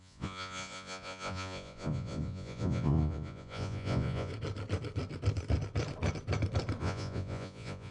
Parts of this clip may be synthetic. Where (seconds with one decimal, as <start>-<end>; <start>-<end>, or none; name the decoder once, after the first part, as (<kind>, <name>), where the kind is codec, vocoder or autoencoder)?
0.0-4.3 (vocoder, Vocos); 6.8-7.9